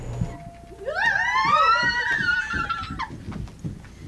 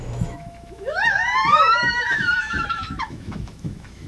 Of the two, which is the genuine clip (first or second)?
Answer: first